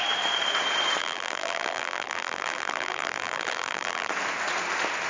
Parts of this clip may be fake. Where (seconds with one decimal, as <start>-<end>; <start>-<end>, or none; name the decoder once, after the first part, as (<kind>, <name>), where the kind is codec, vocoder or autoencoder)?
1.0-4.1 (vocoder, BigVGAN v2)